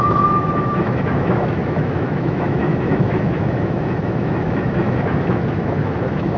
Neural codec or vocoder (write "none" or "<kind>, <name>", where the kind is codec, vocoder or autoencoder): autoencoder, DAC-VAE